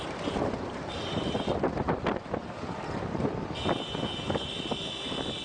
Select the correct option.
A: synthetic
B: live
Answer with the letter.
B